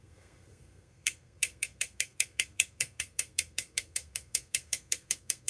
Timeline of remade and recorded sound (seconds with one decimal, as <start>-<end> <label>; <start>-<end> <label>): 0.0-5.5 remade